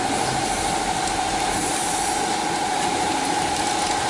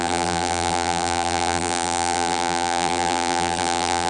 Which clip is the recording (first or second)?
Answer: first